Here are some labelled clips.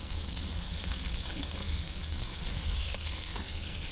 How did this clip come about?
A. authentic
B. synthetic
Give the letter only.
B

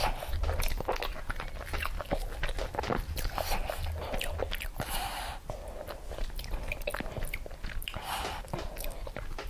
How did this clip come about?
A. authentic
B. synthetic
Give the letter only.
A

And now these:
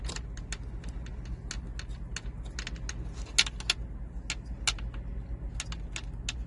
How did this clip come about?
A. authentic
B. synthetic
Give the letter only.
A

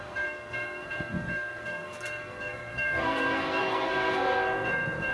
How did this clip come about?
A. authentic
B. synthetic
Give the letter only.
B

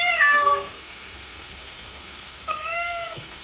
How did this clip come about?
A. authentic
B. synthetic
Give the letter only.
B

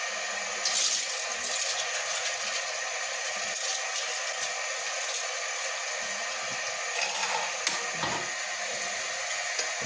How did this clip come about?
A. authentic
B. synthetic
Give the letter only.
A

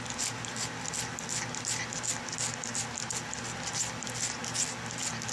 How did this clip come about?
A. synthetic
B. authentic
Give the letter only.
B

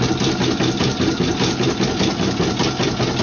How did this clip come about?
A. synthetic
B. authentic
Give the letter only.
B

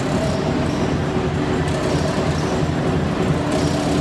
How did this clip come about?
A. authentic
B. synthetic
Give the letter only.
A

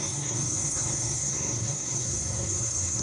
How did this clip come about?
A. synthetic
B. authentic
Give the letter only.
A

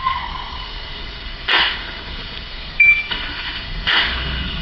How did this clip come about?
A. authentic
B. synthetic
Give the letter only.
B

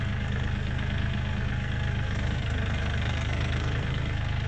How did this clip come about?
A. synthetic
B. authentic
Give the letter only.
A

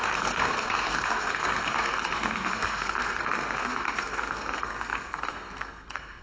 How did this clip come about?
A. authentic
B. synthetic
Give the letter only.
B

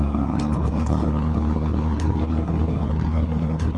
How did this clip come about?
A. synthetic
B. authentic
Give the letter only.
A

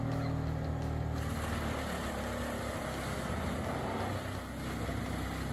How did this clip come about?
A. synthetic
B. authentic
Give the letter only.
B